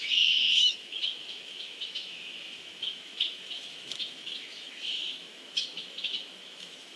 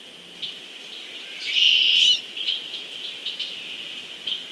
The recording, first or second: second